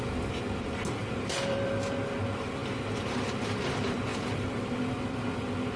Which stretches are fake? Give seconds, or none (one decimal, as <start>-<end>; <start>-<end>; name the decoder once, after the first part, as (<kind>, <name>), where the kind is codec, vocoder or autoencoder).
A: 1.0-1.8 (vocoder, BigVGAN v2); 4.1-4.9